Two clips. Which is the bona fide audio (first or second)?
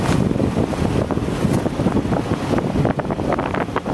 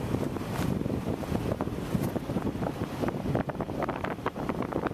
first